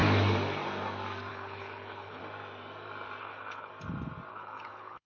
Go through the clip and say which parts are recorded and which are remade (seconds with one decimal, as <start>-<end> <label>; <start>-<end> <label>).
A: 0.0-1.3 recorded; 1.3-2.2 remade; 2.2-3.2 recorded; 3.2-3.7 remade; 3.7-4.3 recorded; 4.3-5.1 remade